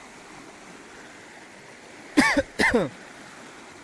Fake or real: real